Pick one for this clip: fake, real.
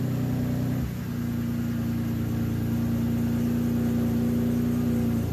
real